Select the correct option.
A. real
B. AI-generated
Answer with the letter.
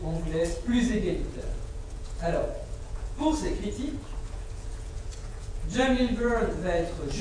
B